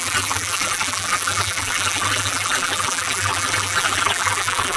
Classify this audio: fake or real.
fake